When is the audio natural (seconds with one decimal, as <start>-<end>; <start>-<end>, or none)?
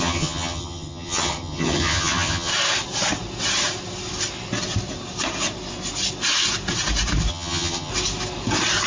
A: 2.5-7.3; 7.9-8.9